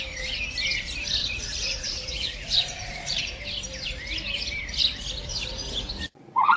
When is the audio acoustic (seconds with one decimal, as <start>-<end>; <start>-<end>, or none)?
0.0-1.2; 3.2-5.3